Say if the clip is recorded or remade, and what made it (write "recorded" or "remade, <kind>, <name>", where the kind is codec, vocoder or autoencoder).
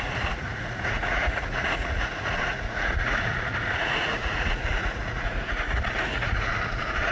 remade, vocoder, Vocos